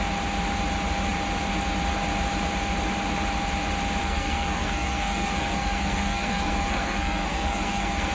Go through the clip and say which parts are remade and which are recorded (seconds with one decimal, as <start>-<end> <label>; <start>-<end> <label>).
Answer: 0.0-4.0 recorded; 4.0-8.1 remade